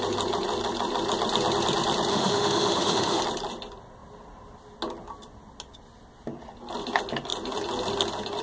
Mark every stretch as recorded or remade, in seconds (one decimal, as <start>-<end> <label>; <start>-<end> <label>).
0.0-2.1 recorded; 2.1-3.2 remade; 3.2-8.4 recorded